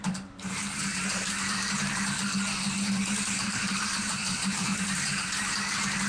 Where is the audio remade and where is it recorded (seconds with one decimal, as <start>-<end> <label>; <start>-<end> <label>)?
0.0-0.9 remade; 0.9-3.4 recorded; 3.4-4.7 remade; 4.7-6.1 recorded